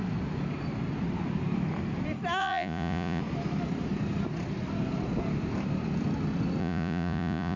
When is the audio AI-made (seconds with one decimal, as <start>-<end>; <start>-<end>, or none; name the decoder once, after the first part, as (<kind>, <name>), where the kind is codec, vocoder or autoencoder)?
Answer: 2.4-3.2 (vocoder, Vocos); 6.6-7.6